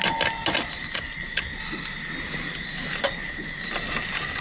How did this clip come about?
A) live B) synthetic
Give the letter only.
A